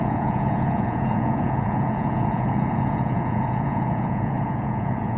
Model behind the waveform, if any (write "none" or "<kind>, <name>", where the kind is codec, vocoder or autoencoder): vocoder, Vocos